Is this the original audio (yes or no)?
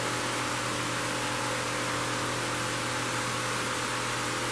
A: yes